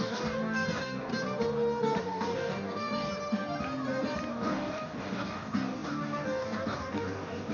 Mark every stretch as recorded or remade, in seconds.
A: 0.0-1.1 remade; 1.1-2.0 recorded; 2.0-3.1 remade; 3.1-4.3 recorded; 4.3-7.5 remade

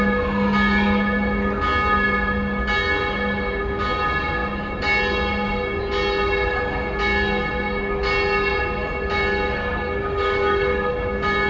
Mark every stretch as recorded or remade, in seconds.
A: 0.0-9.6 recorded; 9.6-10.9 remade; 10.9-11.5 recorded

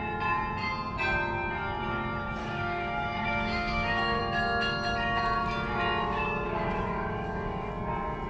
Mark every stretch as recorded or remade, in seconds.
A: 0.0-2.4 recorded; 2.4-4.2 remade; 4.2-6.0 recorded; 6.0-7.7 remade; 7.7-8.3 recorded

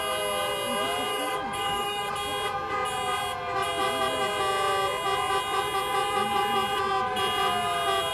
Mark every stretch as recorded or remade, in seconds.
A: 0.0-1.1 recorded; 1.1-2.1 remade; 2.1-8.1 recorded

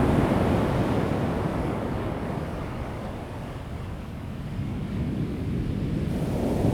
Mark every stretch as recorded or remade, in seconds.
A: 0.0-1.5 recorded; 1.5-5.5 remade; 5.5-6.7 recorded

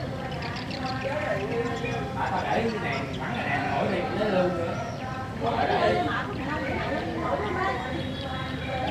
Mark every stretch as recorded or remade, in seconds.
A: 0.0-8.9 recorded